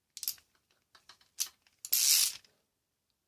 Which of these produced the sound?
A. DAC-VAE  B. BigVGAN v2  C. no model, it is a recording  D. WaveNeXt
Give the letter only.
C